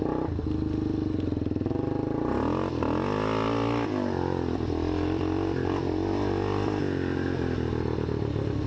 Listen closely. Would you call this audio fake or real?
real